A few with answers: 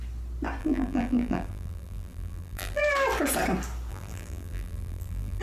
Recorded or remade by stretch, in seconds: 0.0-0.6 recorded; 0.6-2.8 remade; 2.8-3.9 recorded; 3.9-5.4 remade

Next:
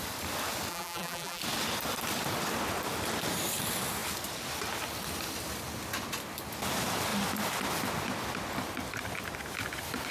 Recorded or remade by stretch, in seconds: 0.0-0.7 recorded; 0.7-1.4 remade; 1.4-10.1 recorded

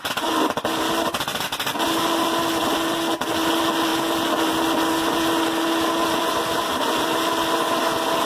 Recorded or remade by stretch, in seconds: 0.0-8.3 recorded

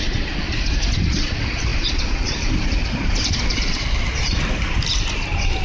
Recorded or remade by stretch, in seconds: 0.0-5.6 remade

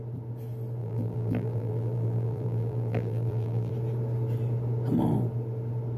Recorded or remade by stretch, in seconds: 0.0-0.8 recorded; 0.8-3.7 remade; 3.7-6.0 recorded